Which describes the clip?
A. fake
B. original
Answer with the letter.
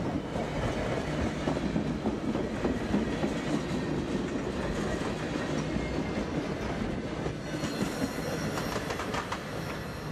B